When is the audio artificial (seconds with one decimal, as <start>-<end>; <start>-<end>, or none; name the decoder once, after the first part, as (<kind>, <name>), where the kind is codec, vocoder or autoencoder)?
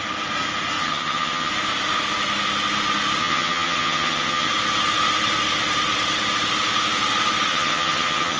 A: 0.8-1.5 (vocoder, HiFi-GAN); 3.2-4.5; 7.5-8.4